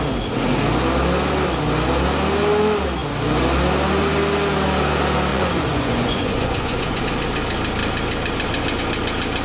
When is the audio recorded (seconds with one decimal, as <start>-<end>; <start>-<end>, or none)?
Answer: 0.0-5.3; 7.0-9.4